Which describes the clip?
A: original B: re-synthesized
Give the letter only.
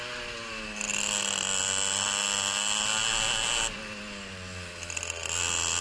A